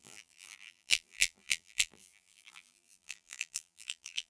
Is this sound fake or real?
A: fake